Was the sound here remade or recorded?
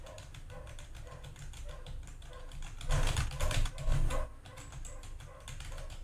recorded